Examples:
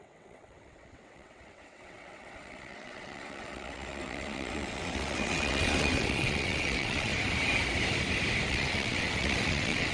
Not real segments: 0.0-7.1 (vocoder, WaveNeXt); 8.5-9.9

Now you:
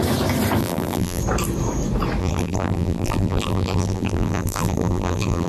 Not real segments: 0.6-1.2 (vocoder, BigVGAN v2); 2.2-5.5